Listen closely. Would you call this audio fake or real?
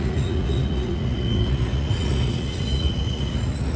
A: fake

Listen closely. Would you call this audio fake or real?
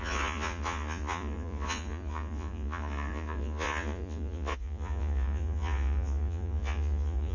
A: fake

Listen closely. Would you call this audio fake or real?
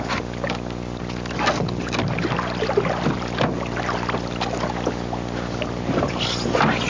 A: real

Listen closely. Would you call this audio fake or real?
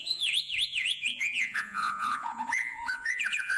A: fake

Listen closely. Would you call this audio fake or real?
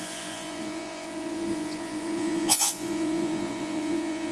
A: fake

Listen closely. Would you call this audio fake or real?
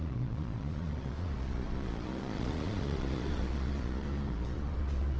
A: fake